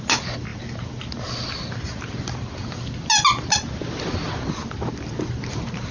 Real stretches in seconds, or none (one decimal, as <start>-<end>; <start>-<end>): 0.0-5.9